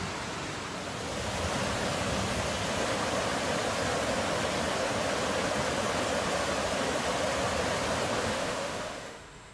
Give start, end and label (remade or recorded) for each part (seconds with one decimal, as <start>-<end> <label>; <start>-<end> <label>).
0.0-8.2 recorded; 8.2-9.5 remade